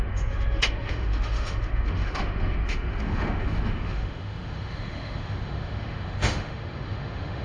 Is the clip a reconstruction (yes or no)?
yes